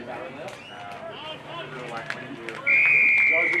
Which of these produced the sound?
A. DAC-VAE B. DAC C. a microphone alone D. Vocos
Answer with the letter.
C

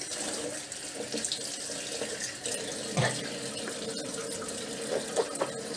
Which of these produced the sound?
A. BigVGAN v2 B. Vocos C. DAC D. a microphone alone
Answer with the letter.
D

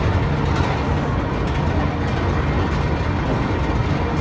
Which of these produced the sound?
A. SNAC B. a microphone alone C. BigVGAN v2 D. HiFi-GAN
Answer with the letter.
B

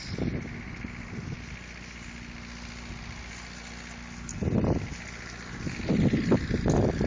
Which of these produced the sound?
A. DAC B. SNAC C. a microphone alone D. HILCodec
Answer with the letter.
C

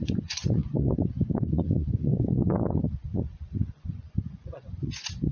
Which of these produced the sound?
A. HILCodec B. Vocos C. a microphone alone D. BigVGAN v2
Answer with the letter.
B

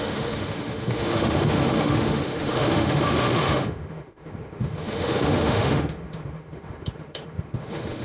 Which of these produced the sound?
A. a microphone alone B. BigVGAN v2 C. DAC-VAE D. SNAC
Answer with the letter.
C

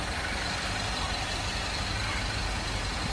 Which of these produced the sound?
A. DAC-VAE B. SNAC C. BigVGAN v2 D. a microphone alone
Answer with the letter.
D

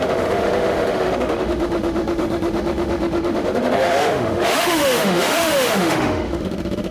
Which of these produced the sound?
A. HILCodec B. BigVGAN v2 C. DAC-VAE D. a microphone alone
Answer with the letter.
C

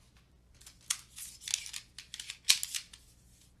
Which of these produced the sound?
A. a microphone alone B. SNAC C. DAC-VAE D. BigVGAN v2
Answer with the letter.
A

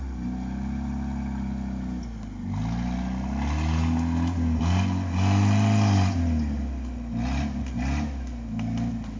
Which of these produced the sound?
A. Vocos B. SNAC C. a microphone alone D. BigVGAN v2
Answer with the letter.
C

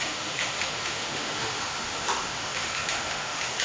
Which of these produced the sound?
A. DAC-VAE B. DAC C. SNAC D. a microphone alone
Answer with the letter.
A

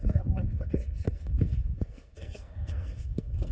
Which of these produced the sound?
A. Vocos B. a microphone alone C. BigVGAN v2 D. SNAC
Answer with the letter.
D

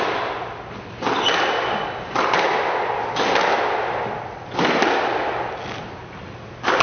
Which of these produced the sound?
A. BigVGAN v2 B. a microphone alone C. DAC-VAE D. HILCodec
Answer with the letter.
B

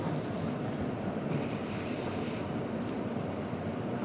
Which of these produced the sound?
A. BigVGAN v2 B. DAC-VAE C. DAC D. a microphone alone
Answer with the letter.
D